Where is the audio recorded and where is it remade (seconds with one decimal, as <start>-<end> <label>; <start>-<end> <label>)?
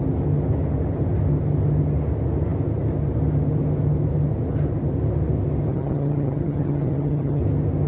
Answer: 0.0-5.7 recorded; 5.7-7.4 remade; 7.4-7.9 recorded